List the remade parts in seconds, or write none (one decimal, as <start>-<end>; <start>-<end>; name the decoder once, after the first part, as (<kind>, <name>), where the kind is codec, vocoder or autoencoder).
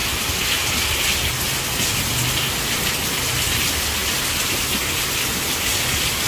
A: none